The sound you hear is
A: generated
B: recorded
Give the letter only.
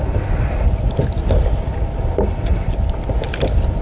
B